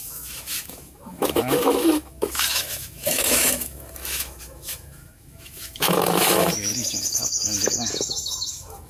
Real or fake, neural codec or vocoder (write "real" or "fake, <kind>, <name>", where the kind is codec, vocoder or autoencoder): fake, autoencoder, DAC-VAE